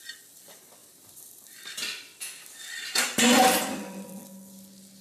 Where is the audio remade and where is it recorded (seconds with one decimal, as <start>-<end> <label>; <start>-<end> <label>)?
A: 0.0-0.8 recorded; 0.8-3.8 remade; 3.8-5.0 recorded

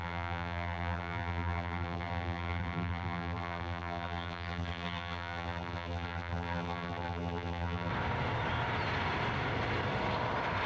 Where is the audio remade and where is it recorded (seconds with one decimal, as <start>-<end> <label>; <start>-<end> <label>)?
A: 0.0-7.9 remade; 7.9-10.7 recorded

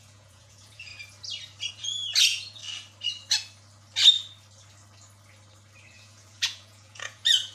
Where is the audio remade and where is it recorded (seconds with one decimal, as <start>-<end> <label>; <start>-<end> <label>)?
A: 0.0-0.9 remade; 0.9-1.7 recorded; 1.7-2.6 remade; 2.6-5.9 recorded; 5.9-7.5 remade

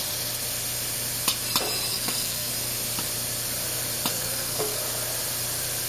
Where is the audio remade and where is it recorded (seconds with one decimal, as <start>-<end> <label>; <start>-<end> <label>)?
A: 0.0-1.9 recorded; 1.9-2.5 remade; 2.5-4.1 recorded; 4.1-4.8 remade; 4.8-5.9 recorded